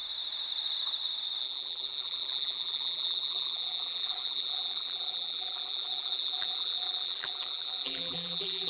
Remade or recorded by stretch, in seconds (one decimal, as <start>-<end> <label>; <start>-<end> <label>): 0.0-1.4 recorded; 1.4-8.7 remade